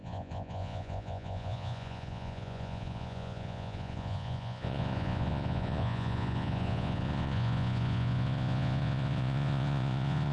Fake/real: fake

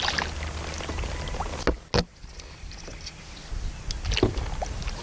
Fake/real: real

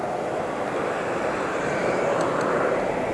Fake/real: real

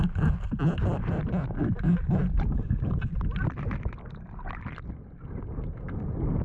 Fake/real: real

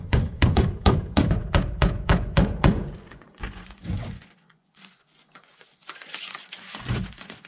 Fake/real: fake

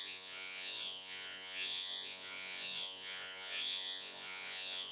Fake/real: fake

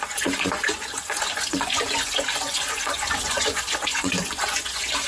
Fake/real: fake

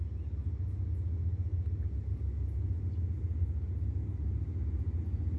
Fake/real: real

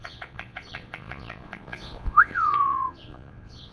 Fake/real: fake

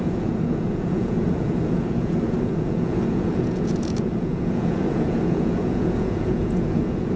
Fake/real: fake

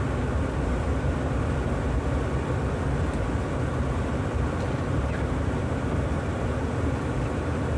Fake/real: real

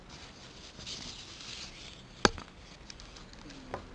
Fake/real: real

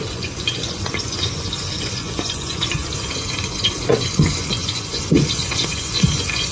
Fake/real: fake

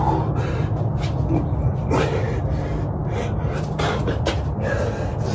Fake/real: real